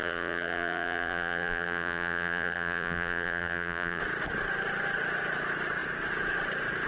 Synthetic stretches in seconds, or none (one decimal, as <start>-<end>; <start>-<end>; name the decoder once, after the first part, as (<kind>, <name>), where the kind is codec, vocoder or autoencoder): 0.0-4.0 (vocoder, BigVGAN v2)